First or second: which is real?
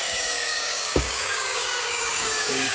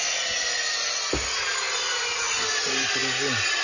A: second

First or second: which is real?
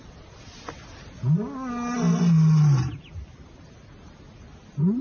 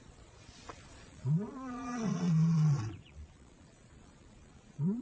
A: first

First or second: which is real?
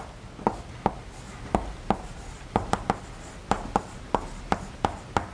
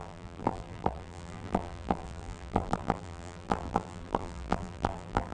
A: first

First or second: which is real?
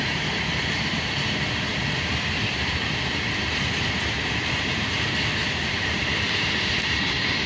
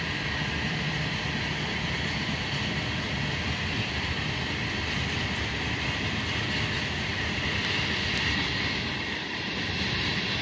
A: second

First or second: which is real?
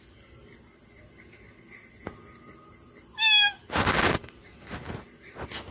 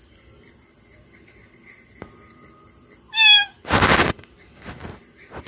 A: first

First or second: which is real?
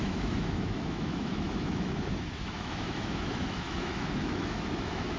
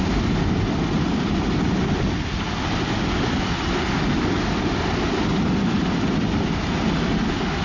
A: second